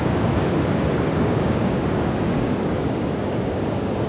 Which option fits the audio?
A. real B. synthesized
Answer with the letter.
B